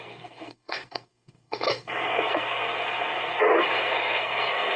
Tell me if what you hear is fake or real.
fake